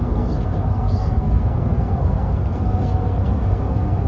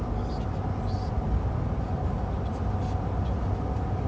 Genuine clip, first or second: second